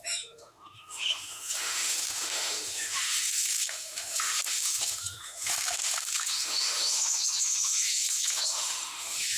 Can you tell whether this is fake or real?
fake